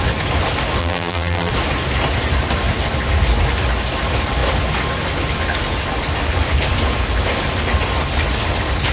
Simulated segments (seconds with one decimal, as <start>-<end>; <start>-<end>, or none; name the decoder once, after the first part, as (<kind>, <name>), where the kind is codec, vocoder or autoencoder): 0.8-1.5 (vocoder, BigVGAN v2)